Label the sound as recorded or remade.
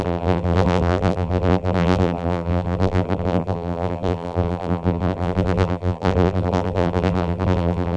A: remade